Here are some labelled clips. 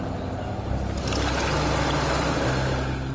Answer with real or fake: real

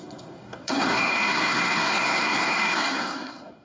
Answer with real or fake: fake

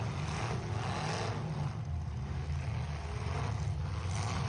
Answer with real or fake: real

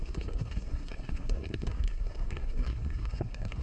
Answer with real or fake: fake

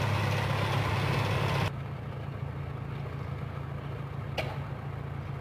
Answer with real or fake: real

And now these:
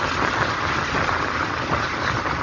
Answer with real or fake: real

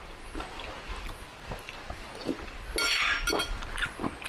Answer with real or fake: real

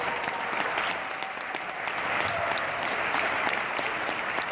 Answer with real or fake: real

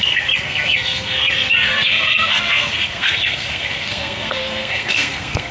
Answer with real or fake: fake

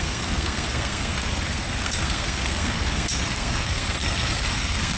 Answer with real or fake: fake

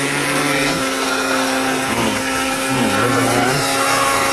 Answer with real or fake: fake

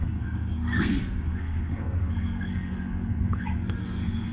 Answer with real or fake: fake